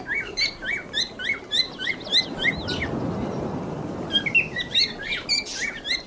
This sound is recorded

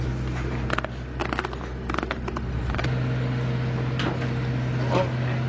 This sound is recorded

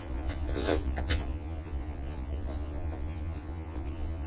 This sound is remade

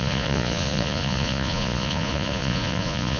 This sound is remade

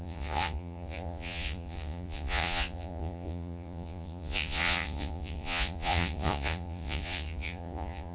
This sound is remade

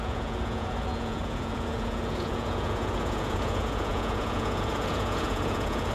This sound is remade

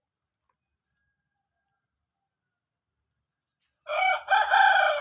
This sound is recorded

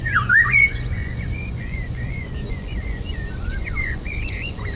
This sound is remade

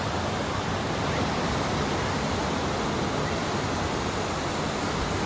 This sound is recorded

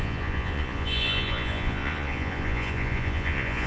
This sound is remade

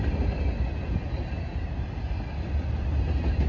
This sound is recorded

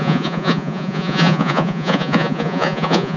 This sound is remade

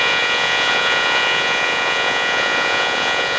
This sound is remade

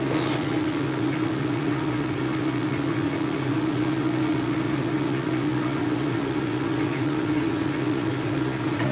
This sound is remade